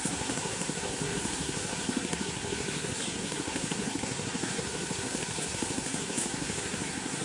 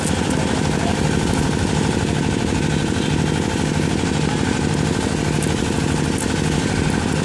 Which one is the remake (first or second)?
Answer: first